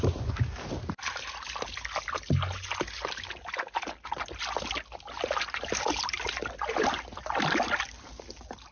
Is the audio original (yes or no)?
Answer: yes